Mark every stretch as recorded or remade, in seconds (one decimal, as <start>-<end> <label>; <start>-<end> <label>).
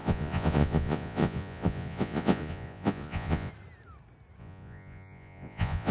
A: 0.0-3.5 remade; 3.5-4.4 recorded; 4.4-5.9 remade